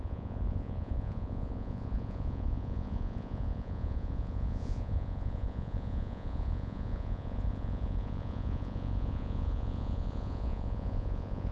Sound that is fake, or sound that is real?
fake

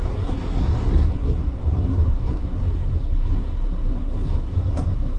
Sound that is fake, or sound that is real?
fake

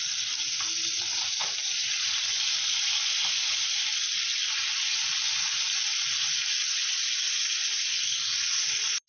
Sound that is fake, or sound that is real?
real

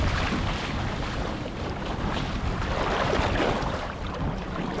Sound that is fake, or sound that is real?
real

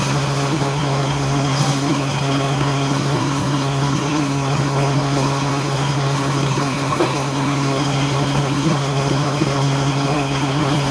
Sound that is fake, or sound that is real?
fake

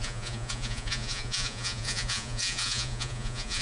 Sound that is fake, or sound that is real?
fake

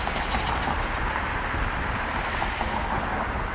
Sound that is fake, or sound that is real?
real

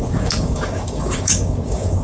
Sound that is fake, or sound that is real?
fake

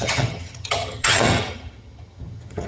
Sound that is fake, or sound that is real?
fake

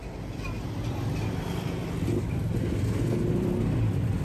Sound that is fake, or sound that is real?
real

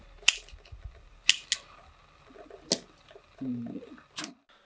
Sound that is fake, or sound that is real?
real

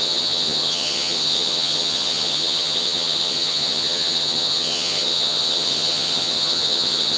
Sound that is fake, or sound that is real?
fake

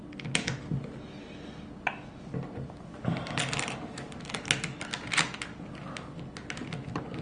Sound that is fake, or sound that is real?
real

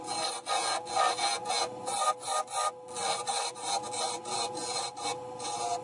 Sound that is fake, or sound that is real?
real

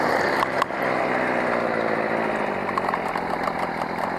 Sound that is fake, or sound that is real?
real